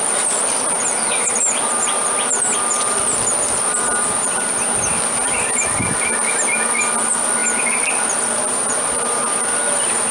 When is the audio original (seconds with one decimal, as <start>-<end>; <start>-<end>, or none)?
0.0-10.1